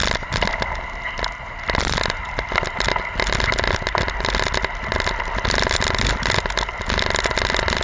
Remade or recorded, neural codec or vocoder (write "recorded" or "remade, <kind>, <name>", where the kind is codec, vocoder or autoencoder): recorded